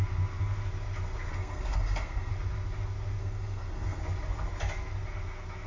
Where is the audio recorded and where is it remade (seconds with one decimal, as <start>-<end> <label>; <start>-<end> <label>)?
0.0-1.3 recorded; 1.3-2.3 remade; 2.3-3.2 recorded; 3.2-4.0 remade; 4.0-5.7 recorded